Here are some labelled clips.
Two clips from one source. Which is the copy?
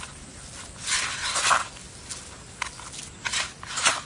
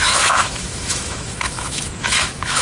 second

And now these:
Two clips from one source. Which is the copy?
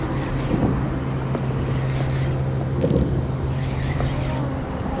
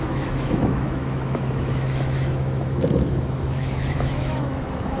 second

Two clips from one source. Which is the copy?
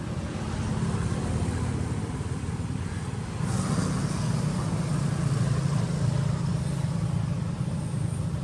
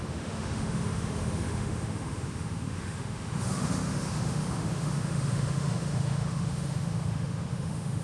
second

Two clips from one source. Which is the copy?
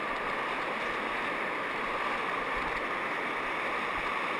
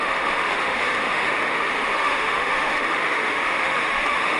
second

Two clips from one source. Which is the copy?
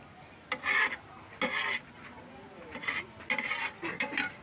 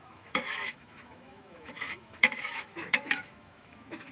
second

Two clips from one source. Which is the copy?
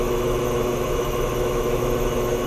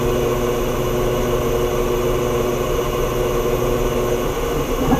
first